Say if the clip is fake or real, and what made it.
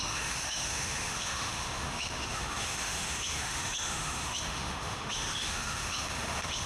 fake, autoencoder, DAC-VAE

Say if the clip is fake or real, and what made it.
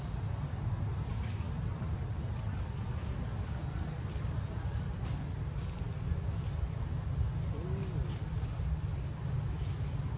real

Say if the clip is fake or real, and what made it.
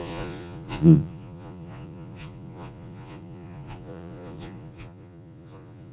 fake, vocoder, Vocos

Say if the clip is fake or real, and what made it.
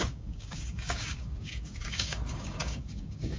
fake, codec, DAC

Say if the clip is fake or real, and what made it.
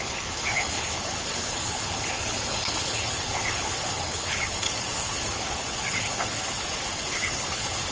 fake, codec, HILCodec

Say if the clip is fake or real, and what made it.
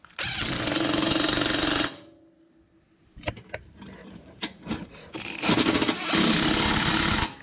real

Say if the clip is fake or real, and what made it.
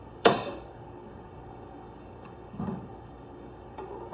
fake, codec, DAC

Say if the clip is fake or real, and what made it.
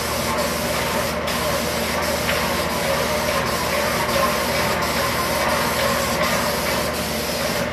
real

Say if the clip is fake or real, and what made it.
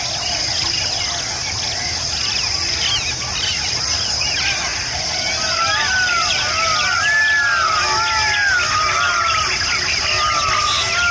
real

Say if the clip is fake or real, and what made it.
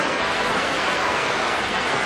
fake, codec, SNAC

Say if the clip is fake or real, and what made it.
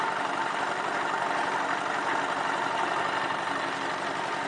real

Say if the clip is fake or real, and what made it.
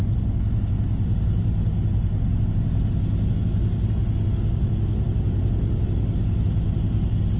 real